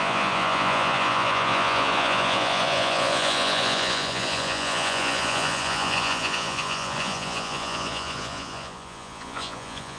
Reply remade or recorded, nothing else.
remade